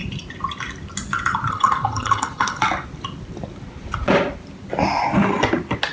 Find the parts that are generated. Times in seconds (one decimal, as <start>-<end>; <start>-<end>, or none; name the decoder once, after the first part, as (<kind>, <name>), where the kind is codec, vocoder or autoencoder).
1.5-2.6 (codec, HILCodec)